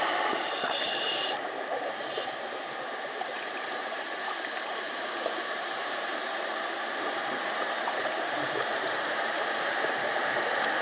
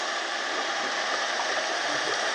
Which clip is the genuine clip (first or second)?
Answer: second